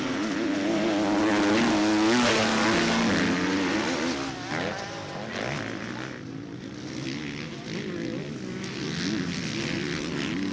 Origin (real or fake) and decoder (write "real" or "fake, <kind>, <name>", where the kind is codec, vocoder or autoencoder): real